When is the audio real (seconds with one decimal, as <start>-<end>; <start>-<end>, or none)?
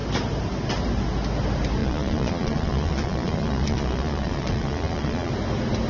0.0-1.8; 5.3-5.9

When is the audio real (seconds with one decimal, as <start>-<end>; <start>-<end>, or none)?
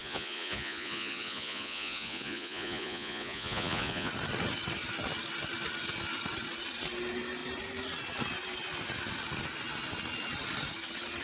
4.1-11.2